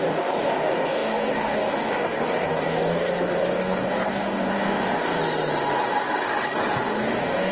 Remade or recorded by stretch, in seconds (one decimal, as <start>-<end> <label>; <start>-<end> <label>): 0.0-5.2 remade; 5.2-7.0 recorded; 7.0-7.5 remade